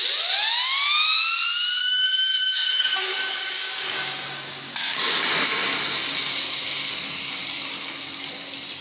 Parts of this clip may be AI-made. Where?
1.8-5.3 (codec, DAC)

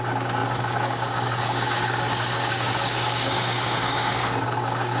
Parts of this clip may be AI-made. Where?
0.0-5.0 (codec, DAC)

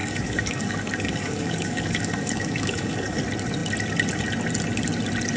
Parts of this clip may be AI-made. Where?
0.0-3.2 (codec, DAC)

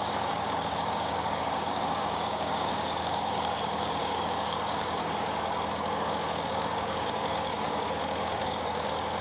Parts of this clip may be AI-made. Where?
0.0-9.2 (codec, DAC)